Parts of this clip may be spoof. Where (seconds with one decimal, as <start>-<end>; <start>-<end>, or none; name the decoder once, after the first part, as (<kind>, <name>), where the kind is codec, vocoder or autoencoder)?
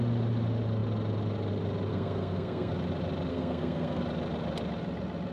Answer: 1.9-2.7 (codec, SNAC); 3.3-4.0